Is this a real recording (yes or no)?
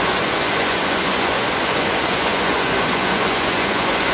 no